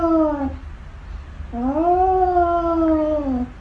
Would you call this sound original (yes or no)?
yes